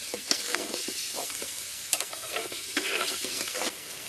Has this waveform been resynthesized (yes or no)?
yes